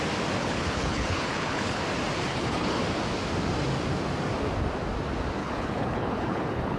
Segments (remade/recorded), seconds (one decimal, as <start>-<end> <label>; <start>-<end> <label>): 0.0-0.4 recorded; 0.4-1.8 remade; 1.8-2.3 recorded; 2.3-2.8 remade; 2.8-5.4 recorded; 5.4-6.8 remade